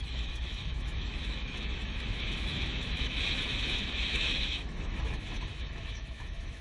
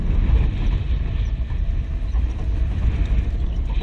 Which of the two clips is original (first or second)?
second